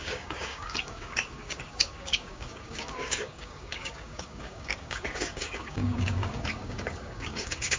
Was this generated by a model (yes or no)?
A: yes